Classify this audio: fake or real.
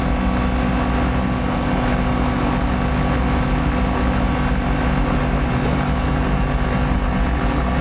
real